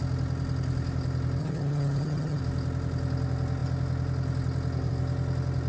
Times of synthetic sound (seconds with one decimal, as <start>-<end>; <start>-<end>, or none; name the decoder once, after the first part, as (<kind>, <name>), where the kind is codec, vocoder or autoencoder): 1.4-2.4 (vocoder, HiFi-GAN)